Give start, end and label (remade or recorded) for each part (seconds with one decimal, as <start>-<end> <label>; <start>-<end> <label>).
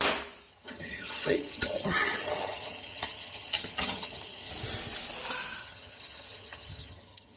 0.0-0.5 recorded; 0.5-4.5 remade; 4.5-5.6 recorded; 5.6-7.4 remade